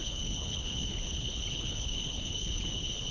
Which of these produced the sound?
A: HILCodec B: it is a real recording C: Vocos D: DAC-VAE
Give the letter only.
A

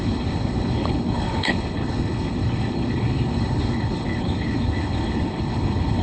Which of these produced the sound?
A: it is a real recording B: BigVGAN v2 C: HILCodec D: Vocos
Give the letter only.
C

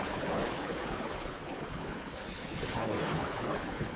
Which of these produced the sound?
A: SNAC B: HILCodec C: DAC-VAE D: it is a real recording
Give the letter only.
B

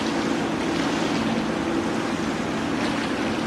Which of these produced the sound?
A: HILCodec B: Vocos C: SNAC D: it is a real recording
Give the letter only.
D